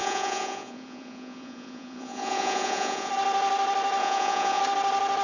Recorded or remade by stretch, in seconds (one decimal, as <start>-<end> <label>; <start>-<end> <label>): 0.0-3.1 remade; 3.1-4.0 recorded; 4.0-4.6 remade; 4.6-5.2 recorded